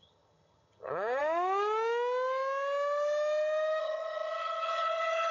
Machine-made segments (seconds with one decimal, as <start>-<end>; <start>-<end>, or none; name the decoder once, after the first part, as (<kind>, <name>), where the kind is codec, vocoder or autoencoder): 0.0-1.2 (vocoder, HiFi-GAN); 3.8-5.3